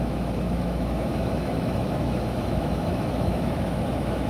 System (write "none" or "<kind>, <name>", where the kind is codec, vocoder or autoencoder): autoencoder, DAC-VAE